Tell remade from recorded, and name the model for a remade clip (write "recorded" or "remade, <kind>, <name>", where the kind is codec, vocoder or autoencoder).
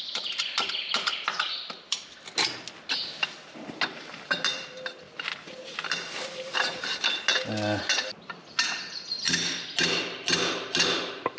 recorded